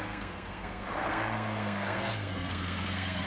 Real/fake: fake